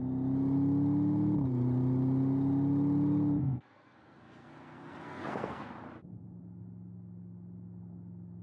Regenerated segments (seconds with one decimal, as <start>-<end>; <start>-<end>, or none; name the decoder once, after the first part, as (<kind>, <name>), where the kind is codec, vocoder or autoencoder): 3.4-5.7 (codec, SNAC)